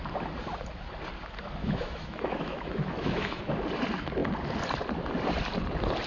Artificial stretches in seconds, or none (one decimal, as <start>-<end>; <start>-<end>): 1.6-3.4